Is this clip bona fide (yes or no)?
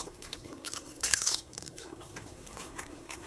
no